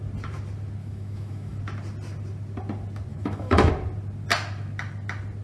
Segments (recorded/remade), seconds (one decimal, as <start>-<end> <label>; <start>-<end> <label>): 0.0-0.8 recorded; 0.8-1.6 remade; 1.6-3.1 recorded; 3.1-3.7 remade; 3.7-5.4 recorded